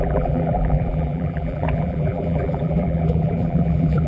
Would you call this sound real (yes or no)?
no